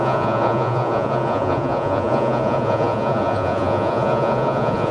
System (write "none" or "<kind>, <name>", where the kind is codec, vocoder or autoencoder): vocoder, Vocos